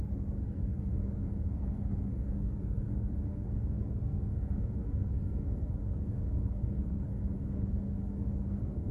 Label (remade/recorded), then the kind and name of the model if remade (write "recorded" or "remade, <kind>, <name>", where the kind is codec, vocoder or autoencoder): remade, codec, SNAC